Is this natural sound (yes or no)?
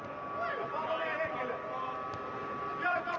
yes